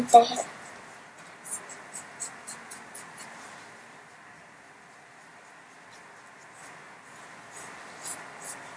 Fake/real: real